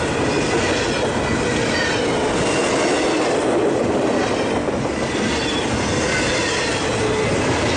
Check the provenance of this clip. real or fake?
real